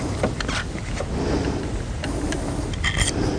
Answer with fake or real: real